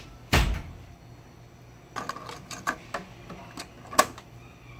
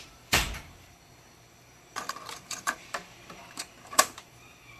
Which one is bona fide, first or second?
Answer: first